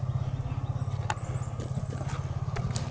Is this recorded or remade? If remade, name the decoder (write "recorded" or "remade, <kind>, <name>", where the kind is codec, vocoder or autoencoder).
recorded